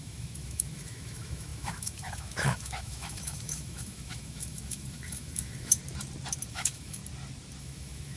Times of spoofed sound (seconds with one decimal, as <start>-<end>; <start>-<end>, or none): 0.0-5.8; 6.5-7.0; 7.6-8.2